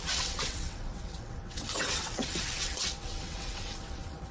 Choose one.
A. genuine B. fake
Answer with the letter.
B